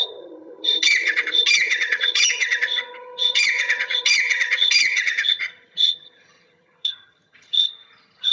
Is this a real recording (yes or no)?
no